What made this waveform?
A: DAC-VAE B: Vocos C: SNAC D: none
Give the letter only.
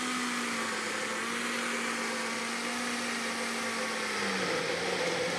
D